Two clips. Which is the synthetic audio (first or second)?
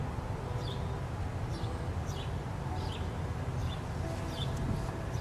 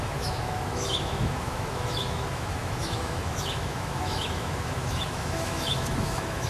second